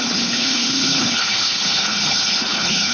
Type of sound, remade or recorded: remade